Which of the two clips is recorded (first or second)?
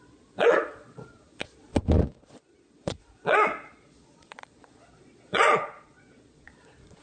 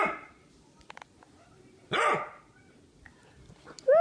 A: second